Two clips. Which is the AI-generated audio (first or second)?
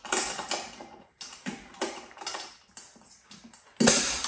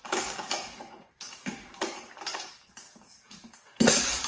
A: second